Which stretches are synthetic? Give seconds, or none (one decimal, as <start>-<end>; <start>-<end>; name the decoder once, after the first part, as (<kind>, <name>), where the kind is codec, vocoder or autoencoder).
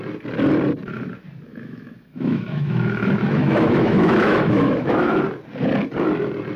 1.5-5.2 (autoencoder, DAC-VAE)